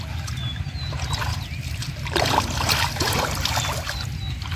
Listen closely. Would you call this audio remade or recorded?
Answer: recorded